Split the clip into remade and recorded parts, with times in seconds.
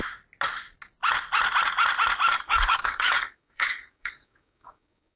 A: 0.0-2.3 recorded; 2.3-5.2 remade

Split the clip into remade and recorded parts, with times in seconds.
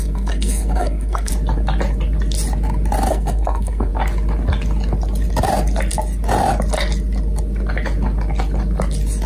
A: 0.0-1.3 remade; 1.3-3.1 recorded; 3.1-3.9 remade; 3.9-9.3 recorded